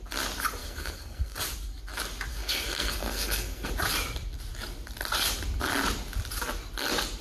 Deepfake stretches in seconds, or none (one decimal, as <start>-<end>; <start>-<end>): 0.6-1.4; 2.3-3.7